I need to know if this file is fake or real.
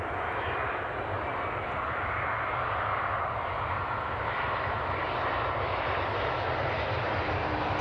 real